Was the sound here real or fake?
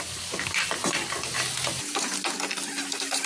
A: real